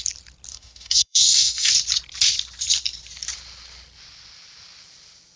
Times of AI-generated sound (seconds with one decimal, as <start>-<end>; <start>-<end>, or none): 0.5-1.7